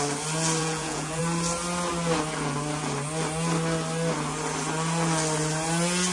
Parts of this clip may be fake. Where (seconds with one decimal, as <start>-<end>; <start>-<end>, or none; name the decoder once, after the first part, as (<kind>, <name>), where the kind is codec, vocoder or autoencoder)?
0.6-1.2 (vocoder, Vocos)